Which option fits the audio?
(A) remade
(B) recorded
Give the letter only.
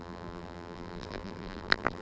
A